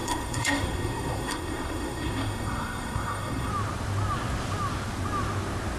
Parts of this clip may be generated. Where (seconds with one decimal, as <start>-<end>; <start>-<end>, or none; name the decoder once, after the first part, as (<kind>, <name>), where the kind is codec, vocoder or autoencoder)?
0.0-3.5 (codec, SNAC)